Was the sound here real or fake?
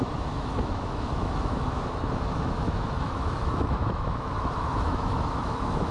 fake